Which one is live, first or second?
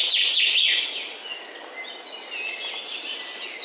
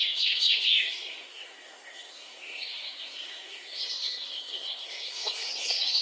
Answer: first